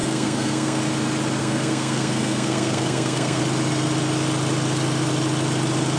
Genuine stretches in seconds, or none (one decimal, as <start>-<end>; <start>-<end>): 0.8-1.4; 3.4-6.0